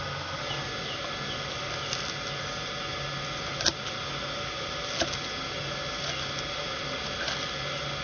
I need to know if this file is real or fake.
real